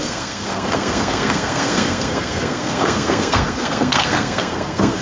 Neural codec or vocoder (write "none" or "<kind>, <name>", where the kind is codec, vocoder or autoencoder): codec, SNAC